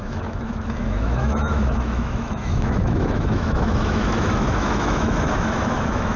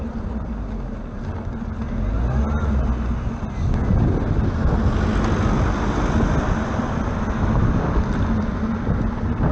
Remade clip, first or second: first